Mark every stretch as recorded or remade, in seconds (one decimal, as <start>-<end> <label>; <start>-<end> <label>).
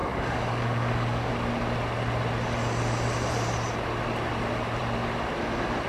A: 0.0-1.3 remade; 1.3-5.9 recorded